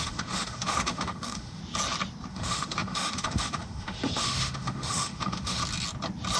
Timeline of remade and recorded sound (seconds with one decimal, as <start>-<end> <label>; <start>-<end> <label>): 0.0-1.6 remade; 1.6-2.3 recorded; 2.3-5.6 remade; 5.6-6.4 recorded